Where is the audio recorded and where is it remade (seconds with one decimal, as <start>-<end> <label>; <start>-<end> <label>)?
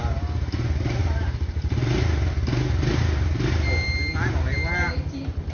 0.0-5.5 recorded